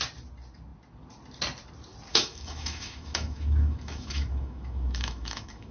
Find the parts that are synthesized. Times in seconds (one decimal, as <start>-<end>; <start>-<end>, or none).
2.1-5.7